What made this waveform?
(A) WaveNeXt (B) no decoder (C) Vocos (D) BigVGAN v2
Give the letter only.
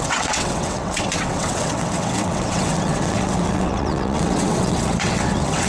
A